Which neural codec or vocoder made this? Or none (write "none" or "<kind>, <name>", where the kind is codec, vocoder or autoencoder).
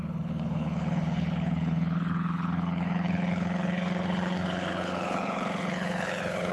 codec, HILCodec